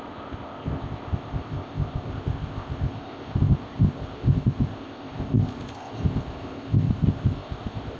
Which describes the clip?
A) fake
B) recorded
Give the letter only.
A